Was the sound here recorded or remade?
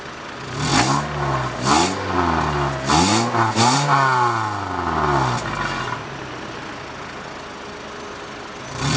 recorded